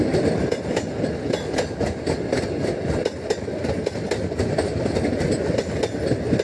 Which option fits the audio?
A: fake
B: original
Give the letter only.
B